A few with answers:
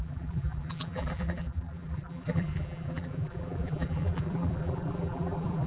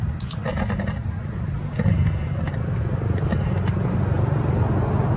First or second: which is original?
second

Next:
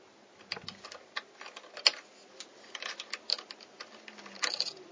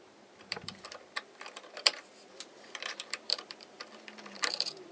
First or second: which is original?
first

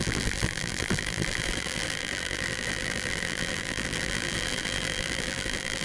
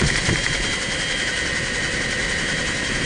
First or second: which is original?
second